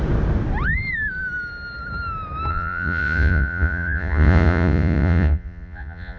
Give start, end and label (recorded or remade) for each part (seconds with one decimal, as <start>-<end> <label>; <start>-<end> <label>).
0.0-2.5 recorded; 2.5-6.2 remade